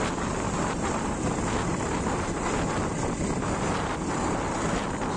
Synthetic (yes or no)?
no